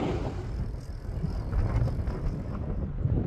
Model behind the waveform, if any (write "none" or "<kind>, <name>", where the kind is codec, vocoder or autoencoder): none